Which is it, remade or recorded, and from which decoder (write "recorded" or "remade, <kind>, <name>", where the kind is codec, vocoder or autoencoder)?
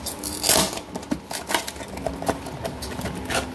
recorded